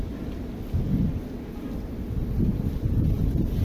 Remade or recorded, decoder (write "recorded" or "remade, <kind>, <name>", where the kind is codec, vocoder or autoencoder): recorded